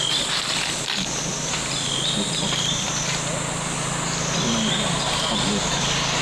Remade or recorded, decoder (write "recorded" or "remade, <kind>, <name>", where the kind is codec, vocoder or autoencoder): recorded